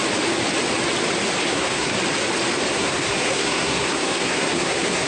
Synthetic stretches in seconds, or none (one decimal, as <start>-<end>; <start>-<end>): 1.4-1.9; 2.7-5.1

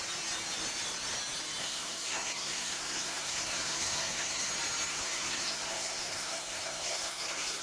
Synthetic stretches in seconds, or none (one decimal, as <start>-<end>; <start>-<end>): 1.6-4.5; 4.9-7.6

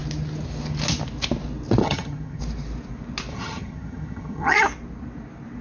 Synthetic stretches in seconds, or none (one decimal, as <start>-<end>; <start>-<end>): 1.8-2.4; 3.3-4.6

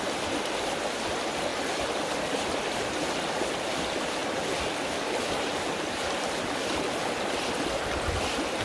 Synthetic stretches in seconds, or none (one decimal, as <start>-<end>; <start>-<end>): none

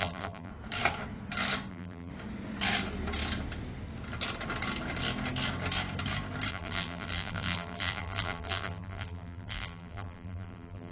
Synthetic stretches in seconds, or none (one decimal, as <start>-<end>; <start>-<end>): 0.0-0.5; 1.7-2.1; 6.5-10.9